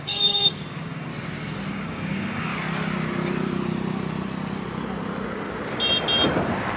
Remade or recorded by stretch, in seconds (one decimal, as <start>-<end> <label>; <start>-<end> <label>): 0.0-1.1 remade; 1.1-1.7 recorded; 1.7-2.5 remade; 2.5-6.8 recorded